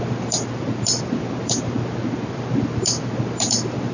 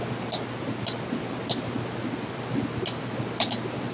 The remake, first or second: first